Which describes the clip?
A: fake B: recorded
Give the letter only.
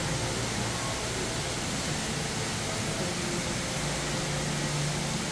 B